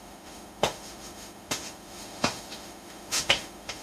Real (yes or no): no